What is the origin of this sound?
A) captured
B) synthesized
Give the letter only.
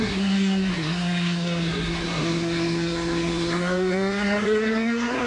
B